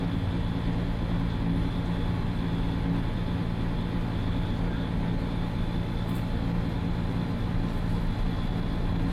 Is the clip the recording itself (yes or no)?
yes